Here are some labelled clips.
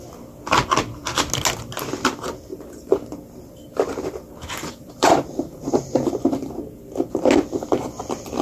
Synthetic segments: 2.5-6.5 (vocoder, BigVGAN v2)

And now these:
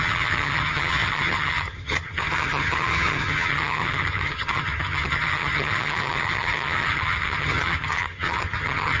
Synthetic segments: 0.0-9.0 (vocoder, HiFi-GAN)

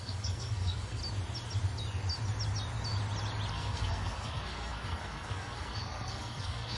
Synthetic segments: 0.0-1.0 (codec, SNAC); 3.5-6.8

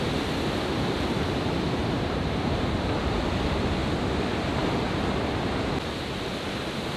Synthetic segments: 1.8-2.9 (vocoder, BigVGAN v2)